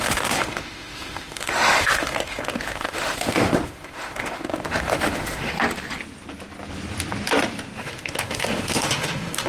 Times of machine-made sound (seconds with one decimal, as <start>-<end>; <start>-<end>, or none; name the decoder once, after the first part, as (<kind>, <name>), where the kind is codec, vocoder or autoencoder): 0.0-5.5 (autoencoder, DAC-VAE); 7.8-9.5